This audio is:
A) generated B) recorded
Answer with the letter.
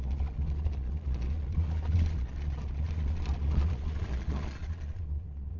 A